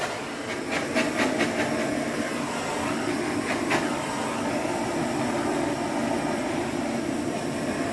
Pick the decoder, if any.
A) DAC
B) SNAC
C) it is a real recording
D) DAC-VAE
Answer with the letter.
C